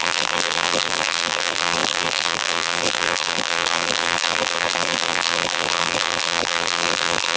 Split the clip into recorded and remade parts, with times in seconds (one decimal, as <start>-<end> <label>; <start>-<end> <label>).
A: 0.0-7.4 remade